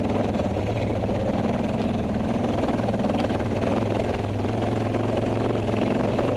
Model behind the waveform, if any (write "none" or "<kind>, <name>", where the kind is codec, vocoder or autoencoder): none